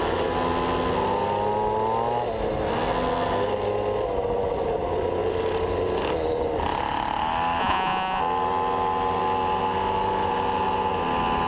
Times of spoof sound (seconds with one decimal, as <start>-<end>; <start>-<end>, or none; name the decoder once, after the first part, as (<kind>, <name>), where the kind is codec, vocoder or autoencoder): 7.6-8.2 (vocoder, Vocos)